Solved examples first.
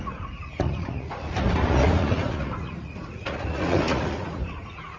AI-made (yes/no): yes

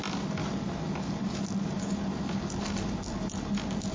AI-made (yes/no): no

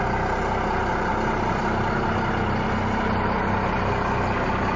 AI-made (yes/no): no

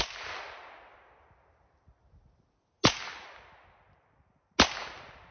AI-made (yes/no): no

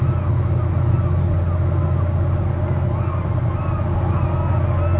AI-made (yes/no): no